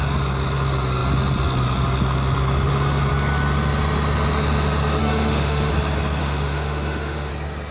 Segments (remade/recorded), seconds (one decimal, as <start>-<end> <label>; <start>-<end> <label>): 0.0-5.0 recorded; 5.0-5.7 remade; 5.7-6.2 recorded; 6.2-7.3 remade; 7.3-7.7 recorded